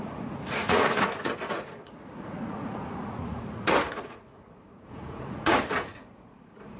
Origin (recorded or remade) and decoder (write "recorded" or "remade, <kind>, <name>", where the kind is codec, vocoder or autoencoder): remade, vocoder, Vocos